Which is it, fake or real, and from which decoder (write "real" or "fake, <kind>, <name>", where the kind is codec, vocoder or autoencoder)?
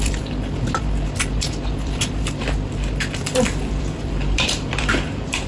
fake, vocoder, BigVGAN v2